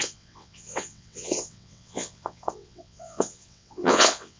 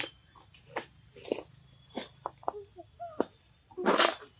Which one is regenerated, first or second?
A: first